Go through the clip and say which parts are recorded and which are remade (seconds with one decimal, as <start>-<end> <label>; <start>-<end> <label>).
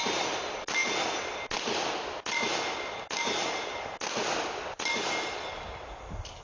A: 0.0-6.4 recorded